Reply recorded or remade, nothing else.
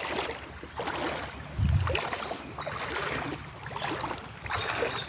recorded